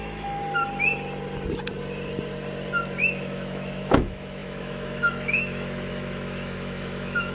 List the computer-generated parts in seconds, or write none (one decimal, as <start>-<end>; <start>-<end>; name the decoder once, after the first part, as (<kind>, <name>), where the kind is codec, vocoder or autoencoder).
0.0-0.4 (autoencoder, DAC-VAE); 3.0-7.3

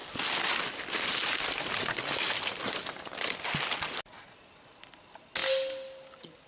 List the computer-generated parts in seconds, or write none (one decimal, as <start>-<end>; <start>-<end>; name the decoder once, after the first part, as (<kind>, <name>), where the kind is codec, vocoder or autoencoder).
none

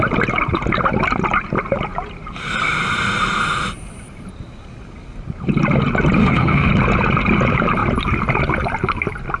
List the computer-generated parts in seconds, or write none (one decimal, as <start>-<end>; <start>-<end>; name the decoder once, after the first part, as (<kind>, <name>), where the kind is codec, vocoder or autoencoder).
6.2-6.7 (autoencoder, DAC-VAE)

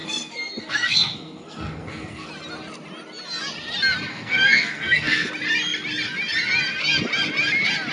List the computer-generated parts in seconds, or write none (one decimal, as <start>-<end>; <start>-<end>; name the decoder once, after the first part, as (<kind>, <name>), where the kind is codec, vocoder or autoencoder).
0.0-2.3 (codec, SNAC); 4.1-5.3